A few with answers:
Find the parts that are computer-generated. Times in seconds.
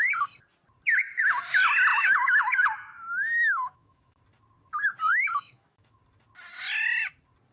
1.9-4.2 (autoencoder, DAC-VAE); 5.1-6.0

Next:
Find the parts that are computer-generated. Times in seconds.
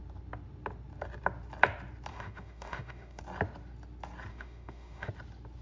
2.1-3.2 (autoencoder, DAC-VAE); 4.3-5.1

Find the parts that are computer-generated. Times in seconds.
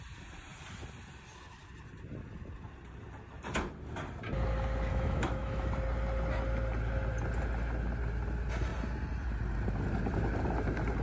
4.9-5.7 (autoencoder, DAC-VAE)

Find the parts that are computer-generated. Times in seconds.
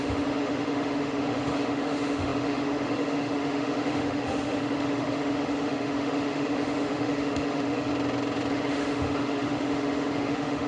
0.0-7.9 (autoencoder, DAC-VAE); 8.5-10.7